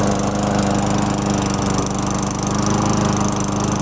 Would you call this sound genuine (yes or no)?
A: yes